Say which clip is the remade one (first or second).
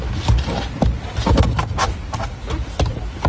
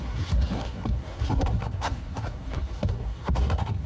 second